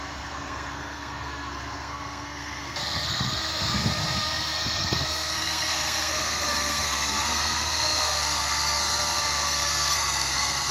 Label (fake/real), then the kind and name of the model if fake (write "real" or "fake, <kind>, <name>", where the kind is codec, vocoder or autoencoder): fake, codec, SNAC